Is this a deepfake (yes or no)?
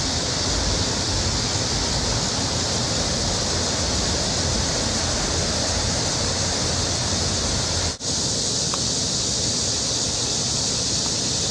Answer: no